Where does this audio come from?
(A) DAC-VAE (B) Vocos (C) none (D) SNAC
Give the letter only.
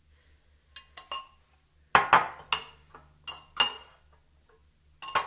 C